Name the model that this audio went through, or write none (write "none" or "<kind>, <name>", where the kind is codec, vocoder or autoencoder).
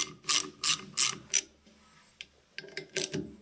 none